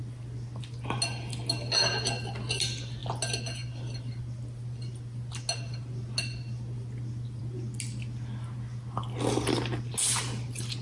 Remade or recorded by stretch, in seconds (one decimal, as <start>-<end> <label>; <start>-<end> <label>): 0.0-10.8 recorded